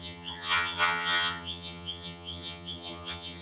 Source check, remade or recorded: remade